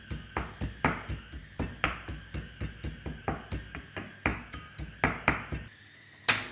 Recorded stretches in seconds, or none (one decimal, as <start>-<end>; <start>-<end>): 0.0-4.3; 4.9-6.5